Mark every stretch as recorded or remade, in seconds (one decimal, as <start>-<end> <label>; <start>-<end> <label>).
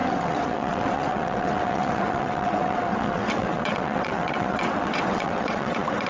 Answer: 0.0-6.1 remade